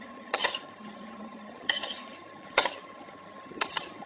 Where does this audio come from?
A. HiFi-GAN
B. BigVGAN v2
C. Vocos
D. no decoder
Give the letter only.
A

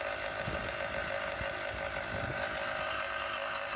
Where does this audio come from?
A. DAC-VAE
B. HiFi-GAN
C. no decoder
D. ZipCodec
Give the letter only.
C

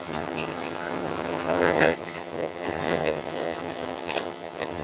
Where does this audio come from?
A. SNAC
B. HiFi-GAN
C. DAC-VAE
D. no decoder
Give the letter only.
B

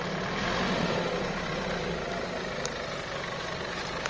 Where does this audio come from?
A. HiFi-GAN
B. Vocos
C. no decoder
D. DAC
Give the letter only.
C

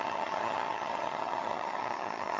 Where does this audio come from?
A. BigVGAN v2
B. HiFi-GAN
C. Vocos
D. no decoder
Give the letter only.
B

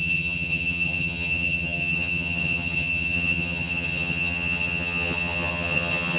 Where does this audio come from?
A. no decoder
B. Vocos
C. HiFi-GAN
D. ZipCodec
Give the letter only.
C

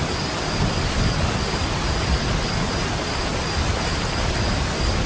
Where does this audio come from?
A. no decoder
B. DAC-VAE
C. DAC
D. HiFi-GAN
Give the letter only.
A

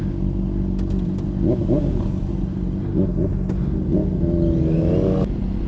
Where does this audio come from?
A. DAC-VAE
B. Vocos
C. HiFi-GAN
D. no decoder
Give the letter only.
D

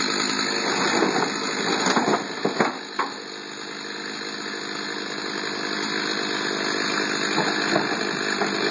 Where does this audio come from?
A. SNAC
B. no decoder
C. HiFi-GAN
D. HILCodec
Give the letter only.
B